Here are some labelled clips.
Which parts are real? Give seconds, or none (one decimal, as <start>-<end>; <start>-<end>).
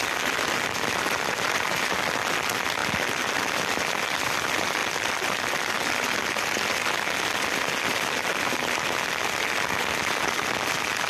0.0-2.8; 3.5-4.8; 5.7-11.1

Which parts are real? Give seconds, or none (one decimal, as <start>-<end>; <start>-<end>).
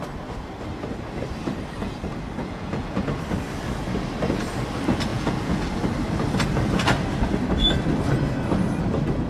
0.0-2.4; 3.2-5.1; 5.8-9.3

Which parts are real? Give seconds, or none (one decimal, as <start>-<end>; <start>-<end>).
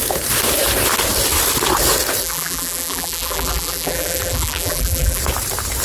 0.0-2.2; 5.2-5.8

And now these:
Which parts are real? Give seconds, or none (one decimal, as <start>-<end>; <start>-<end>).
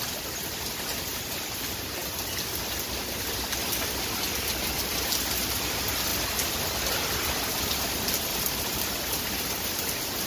0.0-10.3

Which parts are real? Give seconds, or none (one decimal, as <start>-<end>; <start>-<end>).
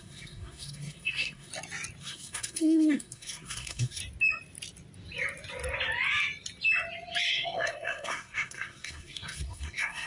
1.5-2.0; 4.0-7.3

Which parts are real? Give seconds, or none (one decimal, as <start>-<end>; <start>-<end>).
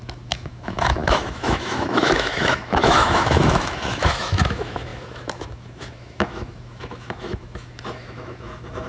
none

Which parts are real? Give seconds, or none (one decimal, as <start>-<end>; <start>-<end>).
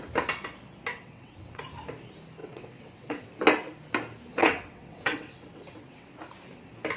0.0-0.9; 1.6-2.4; 3.3-4.3; 6.2-7.0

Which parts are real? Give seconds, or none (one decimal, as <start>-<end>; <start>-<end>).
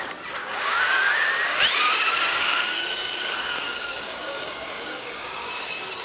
0.0-0.4; 1.3-2.3; 5.5-6.0